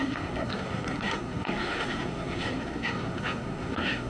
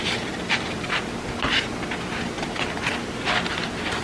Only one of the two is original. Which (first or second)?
second